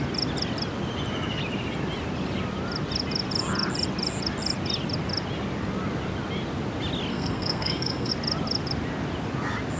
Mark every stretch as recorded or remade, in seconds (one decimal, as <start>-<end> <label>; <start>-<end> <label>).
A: 0.0-7.1 recorded; 7.1-8.1 remade; 8.1-9.8 recorded